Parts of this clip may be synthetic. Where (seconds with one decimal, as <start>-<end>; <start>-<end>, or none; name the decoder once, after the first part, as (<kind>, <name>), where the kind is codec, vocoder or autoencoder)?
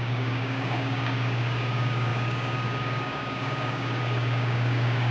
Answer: 0.0-5.1 (codec, DAC)